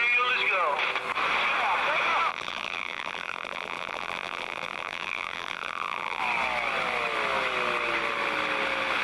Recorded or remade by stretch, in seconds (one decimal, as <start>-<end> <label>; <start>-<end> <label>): 0.0-2.3 recorded; 2.3-6.2 remade; 6.2-9.0 recorded